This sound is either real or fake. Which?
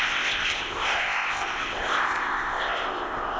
fake